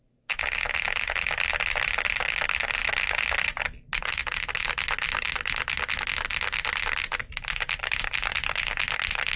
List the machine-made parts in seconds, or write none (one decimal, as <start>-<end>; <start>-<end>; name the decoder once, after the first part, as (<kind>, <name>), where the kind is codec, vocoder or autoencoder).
none